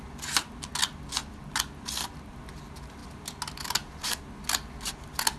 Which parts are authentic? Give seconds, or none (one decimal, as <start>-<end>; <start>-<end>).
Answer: 0.0-5.4